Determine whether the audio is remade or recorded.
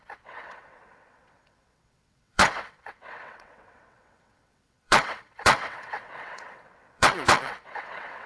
remade